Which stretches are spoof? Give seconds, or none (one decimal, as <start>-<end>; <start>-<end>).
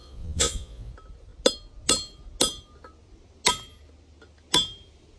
0.0-0.9